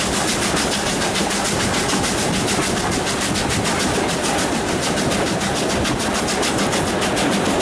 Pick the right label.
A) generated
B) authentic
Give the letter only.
B